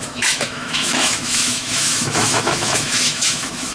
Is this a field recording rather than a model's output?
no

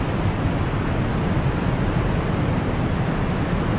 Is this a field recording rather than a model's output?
yes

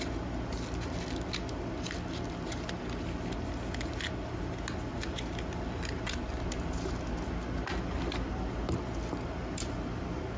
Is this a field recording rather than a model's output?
yes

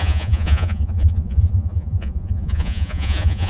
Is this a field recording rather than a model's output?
no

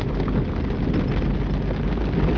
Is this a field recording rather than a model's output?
yes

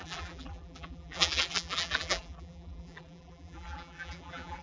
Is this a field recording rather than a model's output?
no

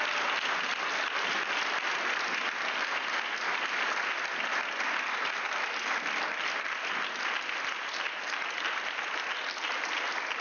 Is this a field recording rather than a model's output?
yes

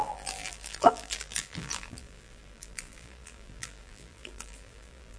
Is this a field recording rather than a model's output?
no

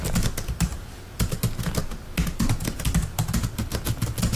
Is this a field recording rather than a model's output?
yes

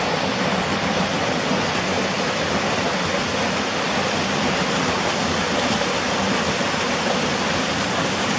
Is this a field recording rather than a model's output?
yes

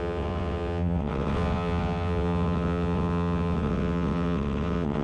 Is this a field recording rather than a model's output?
no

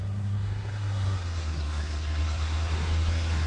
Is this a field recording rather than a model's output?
no